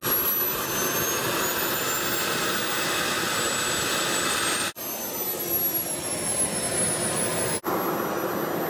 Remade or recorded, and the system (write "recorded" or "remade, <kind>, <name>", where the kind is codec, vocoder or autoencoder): recorded